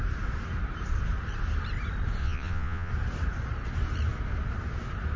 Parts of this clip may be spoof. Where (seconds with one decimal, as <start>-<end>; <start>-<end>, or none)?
2.2-2.9